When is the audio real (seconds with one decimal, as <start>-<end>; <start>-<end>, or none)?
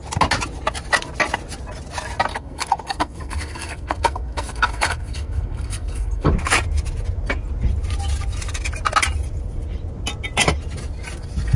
0.0-2.3; 6.3-11.6